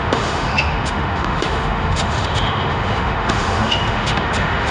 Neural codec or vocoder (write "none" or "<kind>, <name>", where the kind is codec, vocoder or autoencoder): autoencoder, DAC-VAE